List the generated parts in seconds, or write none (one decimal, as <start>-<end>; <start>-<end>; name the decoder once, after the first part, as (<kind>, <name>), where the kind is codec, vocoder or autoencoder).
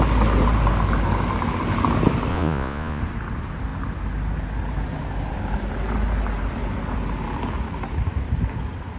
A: 2.3-3.0 (vocoder, Vocos)